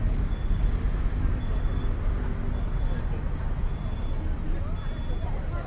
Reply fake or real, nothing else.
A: real